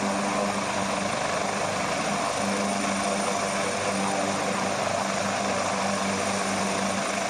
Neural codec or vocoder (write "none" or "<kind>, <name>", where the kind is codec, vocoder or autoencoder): none